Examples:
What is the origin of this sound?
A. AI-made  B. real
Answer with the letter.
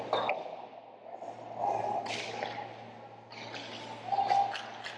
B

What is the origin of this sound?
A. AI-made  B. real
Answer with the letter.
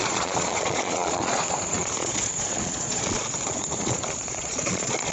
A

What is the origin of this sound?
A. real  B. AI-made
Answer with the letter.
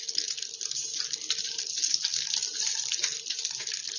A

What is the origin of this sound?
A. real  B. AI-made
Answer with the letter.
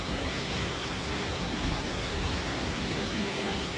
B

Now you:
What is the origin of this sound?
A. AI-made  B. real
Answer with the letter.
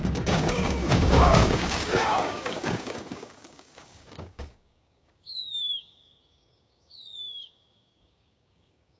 A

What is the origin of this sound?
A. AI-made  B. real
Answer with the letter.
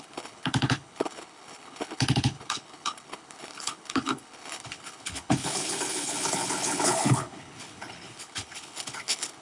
A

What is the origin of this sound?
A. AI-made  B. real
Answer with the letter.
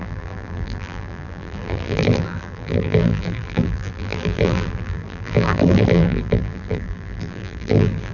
A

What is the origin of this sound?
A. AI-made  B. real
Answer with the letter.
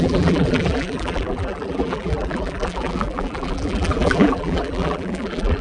A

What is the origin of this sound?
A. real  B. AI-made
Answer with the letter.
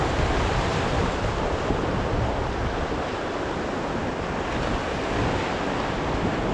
A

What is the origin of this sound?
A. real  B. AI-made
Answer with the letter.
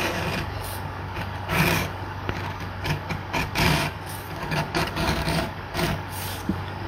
B